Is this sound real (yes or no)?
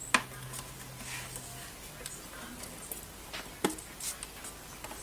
yes